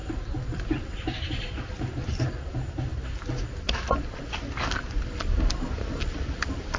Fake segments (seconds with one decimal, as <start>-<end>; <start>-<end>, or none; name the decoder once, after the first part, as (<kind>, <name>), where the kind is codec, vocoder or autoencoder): none